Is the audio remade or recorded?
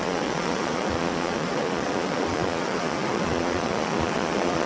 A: remade